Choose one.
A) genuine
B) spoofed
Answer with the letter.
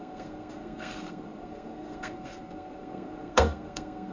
B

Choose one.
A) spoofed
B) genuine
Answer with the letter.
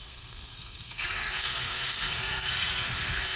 A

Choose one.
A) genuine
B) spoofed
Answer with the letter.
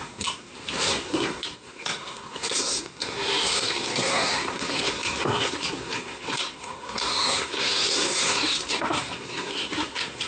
B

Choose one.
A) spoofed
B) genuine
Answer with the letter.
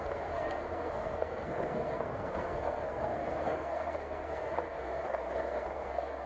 A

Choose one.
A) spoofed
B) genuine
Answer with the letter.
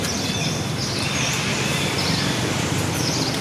B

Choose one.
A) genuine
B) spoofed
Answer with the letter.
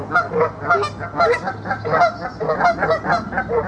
A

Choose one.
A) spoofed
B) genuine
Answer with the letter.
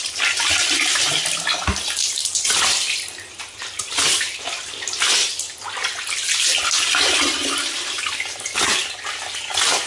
B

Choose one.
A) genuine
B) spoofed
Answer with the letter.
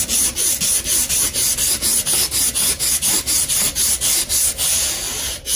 A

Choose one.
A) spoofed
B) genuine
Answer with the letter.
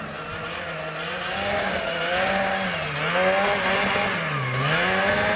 B